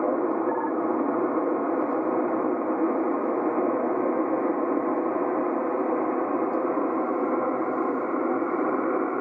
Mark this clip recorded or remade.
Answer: recorded